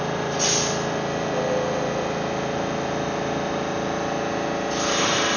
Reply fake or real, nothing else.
real